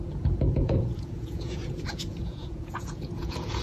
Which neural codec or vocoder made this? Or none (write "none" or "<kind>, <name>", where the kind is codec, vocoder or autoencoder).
vocoder, Vocos